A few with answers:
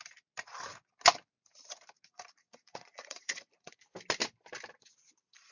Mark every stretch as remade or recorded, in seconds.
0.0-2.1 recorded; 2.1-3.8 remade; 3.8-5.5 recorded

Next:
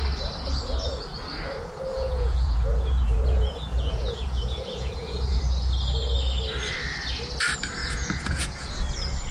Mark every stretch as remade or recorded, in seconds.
0.0-1.9 recorded; 1.9-5.4 remade; 5.4-7.8 recorded; 7.8-8.7 remade; 8.7-9.3 recorded

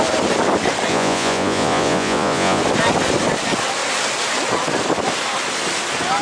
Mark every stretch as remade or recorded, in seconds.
0.0-0.9 recorded; 0.9-2.6 remade; 2.6-6.2 recorded